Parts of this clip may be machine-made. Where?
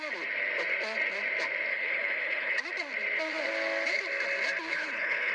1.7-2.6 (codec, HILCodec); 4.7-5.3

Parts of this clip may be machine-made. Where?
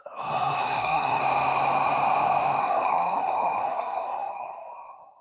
0.0-1.2 (codec, SNAC); 2.6-5.2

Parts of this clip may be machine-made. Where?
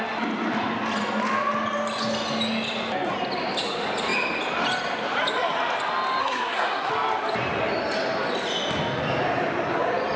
6.2-6.9 (codec, SNAC)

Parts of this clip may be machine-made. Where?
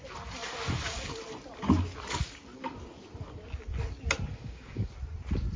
4.4-4.9 (codec, DAC)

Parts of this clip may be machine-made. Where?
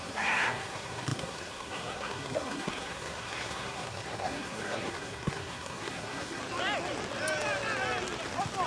0.0-6.4 (codec, SNAC)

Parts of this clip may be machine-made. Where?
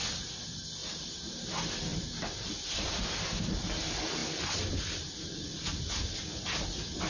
0.8-2.0 (vocoder, BigVGAN v2)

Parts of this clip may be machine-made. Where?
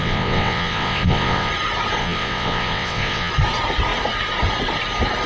0.0-1.5 (vocoder, WaveNeXt); 2.0-3.3